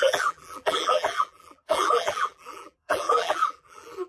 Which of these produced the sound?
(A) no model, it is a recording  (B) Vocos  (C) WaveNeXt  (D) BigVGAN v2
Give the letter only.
D